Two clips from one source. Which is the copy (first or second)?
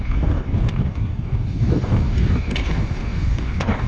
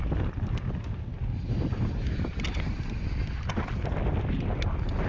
first